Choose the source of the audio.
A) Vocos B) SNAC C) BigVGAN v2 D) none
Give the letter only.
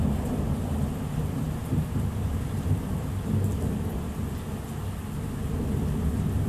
D